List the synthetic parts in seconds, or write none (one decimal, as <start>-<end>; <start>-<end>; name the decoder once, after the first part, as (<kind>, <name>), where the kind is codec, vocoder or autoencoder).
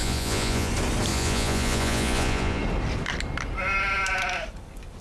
0.0-0.7 (vocoder, Vocos); 1.1-2.6